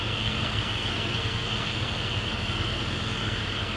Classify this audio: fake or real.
fake